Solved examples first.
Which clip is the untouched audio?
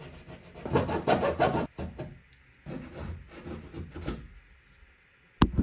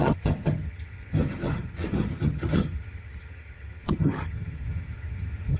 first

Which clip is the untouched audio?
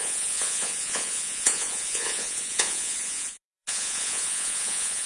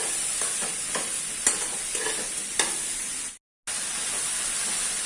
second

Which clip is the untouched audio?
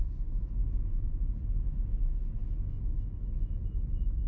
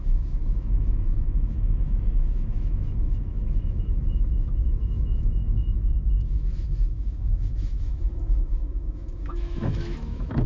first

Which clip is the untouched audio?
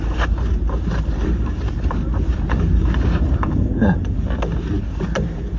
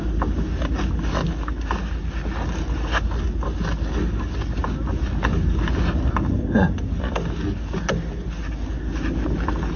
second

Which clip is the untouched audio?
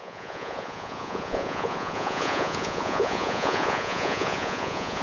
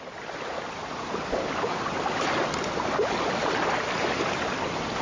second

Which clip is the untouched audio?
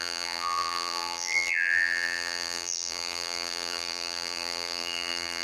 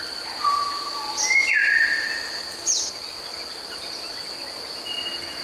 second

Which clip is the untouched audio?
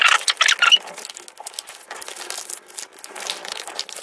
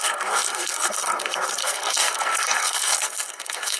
first